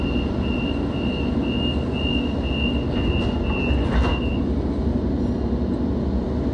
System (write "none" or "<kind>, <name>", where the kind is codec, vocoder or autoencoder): none